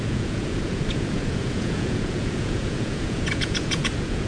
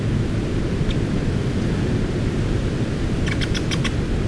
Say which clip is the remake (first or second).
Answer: first